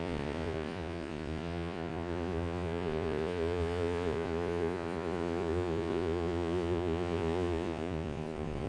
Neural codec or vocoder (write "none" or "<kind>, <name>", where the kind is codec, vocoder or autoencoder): vocoder, Vocos